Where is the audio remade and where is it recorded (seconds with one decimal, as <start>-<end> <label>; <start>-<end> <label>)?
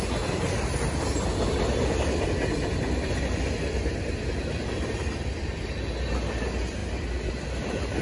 0.0-8.0 recorded